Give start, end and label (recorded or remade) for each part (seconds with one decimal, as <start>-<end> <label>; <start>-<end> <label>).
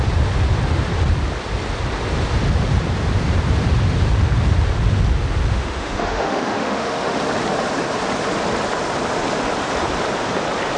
0.0-5.5 recorded; 5.5-7.2 remade; 7.2-10.8 recorded